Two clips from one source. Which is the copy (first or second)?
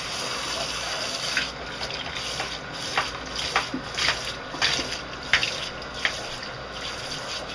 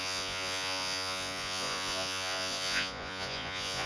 second